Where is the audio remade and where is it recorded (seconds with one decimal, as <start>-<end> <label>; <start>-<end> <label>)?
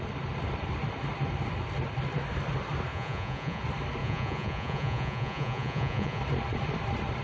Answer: 0.0-2.9 recorded; 2.9-3.6 remade; 3.6-4.0 recorded; 4.0-6.2 remade; 6.2-7.2 recorded